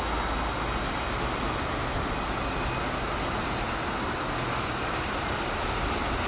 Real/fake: real